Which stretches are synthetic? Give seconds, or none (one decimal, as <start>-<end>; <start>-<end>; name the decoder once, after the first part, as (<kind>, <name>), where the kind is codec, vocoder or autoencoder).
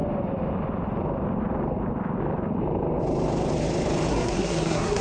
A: 4.1-5.0 (codec, SNAC)